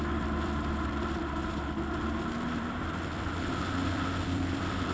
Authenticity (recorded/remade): remade